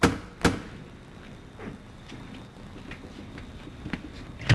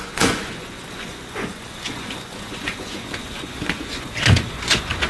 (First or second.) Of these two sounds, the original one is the first